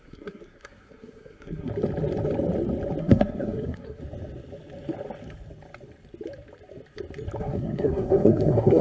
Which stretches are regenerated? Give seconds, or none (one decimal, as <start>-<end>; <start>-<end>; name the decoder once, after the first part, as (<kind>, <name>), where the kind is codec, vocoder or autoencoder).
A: 0.0-1.7 (codec, SNAC); 3.0-4.0; 7.4-8.8